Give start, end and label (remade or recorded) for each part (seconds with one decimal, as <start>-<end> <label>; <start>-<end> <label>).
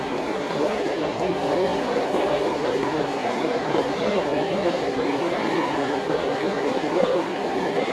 0.0-7.9 remade